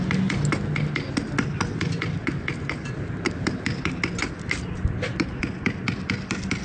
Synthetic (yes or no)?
no